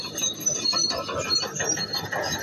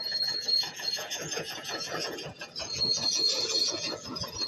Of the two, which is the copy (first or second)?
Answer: second